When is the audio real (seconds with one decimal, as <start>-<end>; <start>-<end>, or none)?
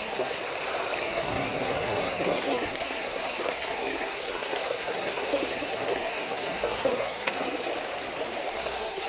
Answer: 0.4-1.0; 7.7-8.5